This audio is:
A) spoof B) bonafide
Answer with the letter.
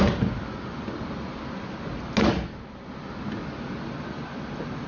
B